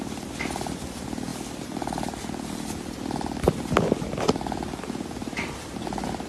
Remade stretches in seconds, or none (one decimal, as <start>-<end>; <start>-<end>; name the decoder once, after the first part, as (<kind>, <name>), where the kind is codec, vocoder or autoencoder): 0.0-1.3 (vocoder, BigVGAN v2); 4.2-6.3